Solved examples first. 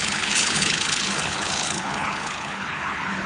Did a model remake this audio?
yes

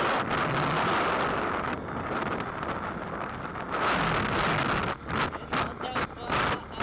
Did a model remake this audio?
no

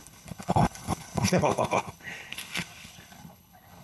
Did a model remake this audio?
yes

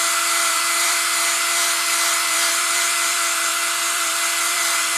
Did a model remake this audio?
yes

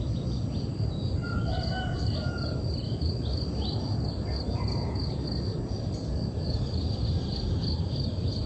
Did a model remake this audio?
no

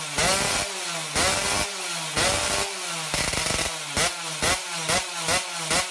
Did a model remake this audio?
no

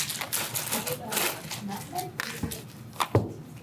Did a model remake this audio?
no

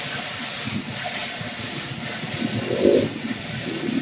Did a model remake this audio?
yes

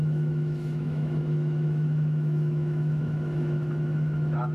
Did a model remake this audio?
yes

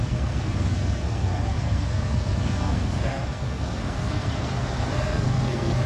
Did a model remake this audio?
yes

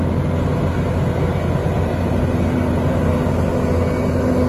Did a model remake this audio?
no